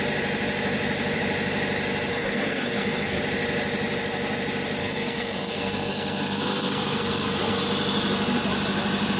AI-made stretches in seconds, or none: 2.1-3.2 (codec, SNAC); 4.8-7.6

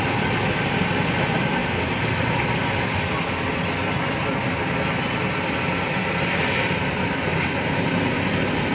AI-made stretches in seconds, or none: none